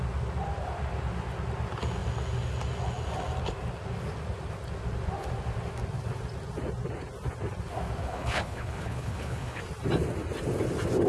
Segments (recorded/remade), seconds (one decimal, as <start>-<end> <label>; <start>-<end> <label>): 0.0-8.0 recorded; 8.0-9.6 remade; 9.6-11.1 recorded